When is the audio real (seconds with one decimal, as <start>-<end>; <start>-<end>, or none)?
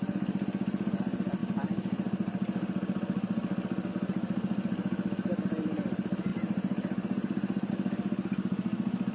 0.0-6.3; 7.7-9.1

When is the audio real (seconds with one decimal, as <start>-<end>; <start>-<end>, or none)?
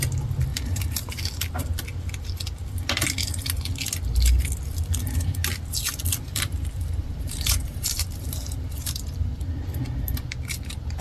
0.0-0.5; 1.2-6.3; 9.4-11.0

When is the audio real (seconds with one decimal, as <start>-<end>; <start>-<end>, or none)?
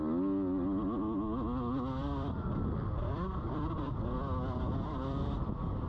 0.0-2.0; 5.5-5.9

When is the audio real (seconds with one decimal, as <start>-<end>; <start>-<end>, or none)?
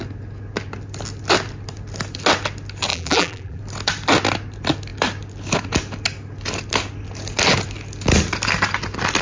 0.0-2.9; 3.6-9.2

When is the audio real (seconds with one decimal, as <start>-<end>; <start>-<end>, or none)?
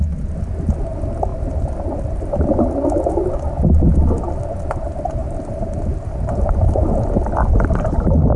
0.0-5.2; 6.8-8.4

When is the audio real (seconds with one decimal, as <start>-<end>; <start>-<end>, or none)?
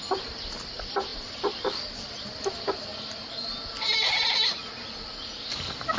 0.0-6.0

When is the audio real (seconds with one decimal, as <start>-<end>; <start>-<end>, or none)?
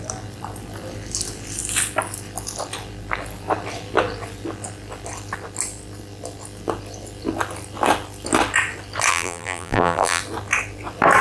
0.0-9.1; 10.2-11.2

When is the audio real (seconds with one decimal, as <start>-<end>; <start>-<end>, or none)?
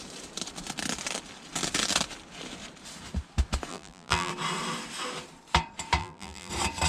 0.0-3.7; 4.3-6.0; 6.5-6.9